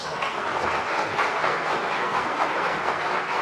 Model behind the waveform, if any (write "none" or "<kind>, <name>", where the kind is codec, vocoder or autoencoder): codec, SNAC